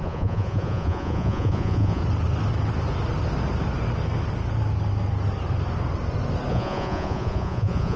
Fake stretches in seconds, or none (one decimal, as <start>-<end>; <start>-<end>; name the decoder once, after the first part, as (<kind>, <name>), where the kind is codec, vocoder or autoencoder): 0.0-2.0 (vocoder, Vocos); 6.5-8.0